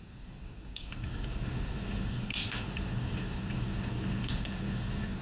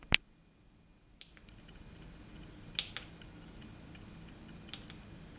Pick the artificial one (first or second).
first